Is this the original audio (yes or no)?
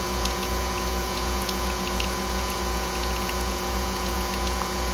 no